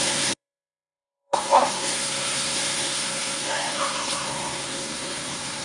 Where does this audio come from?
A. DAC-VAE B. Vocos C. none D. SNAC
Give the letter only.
D